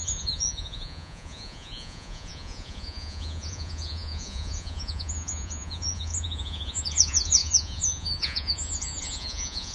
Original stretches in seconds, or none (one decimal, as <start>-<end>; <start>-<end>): none